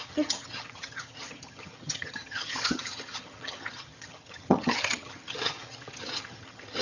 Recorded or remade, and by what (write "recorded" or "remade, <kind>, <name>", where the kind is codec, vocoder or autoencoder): remade, vocoder, HiFi-GAN